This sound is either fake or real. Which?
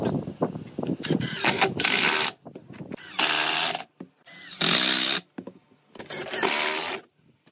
real